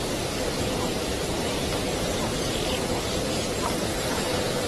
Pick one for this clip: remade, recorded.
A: remade